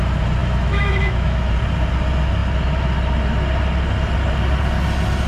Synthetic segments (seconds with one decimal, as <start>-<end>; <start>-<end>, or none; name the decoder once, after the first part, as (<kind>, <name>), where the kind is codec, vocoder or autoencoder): 0.4-1.5 (autoencoder, DAC-VAE)